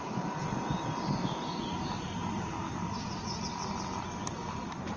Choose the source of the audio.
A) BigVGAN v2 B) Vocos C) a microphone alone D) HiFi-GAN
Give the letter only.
C